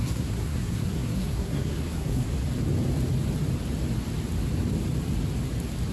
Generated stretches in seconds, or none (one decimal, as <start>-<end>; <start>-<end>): 0.0-2.3